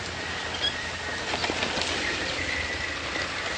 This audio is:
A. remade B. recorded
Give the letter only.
B